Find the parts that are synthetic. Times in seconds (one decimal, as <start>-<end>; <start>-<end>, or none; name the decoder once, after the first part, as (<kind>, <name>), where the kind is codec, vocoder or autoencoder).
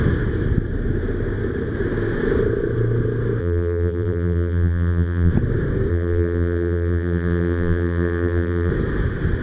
3.4-5.3 (vocoder, BigVGAN v2); 5.9-8.7